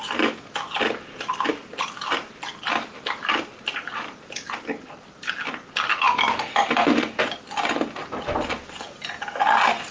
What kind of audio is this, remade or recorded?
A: recorded